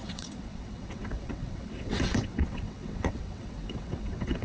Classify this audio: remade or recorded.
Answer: remade